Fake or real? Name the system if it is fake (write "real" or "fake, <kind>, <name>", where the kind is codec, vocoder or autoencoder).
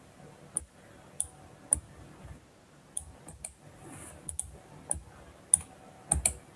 real